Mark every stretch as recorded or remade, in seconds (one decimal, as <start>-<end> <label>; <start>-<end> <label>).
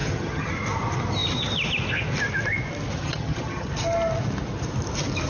0.0-0.5 remade; 0.5-3.0 recorded; 3.0-3.7 remade; 3.7-5.3 recorded